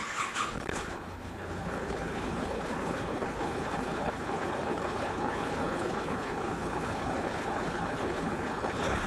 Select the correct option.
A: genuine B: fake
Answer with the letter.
B